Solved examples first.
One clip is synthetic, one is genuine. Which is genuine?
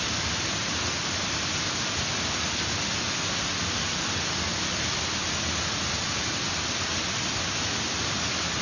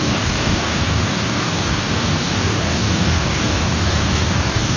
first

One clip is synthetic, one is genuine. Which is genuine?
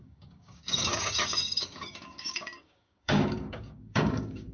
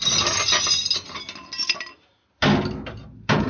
second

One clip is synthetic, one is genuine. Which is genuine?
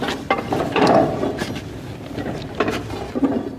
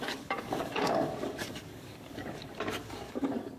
first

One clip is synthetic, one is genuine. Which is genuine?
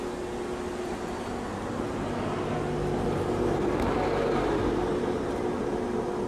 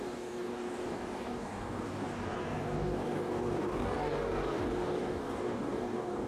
first